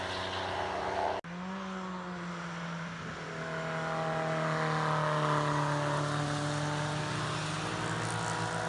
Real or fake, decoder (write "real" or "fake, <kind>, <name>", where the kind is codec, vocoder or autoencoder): real